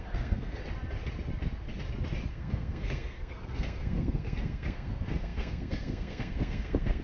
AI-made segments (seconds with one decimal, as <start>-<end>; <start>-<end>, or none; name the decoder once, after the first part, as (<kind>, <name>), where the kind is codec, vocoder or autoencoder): 0.0-0.6 (codec, SNAC); 2.3-7.0